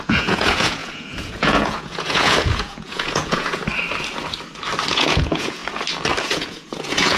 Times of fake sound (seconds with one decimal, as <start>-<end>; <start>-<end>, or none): 0.0-3.6; 4.9-5.6; 6.2-7.2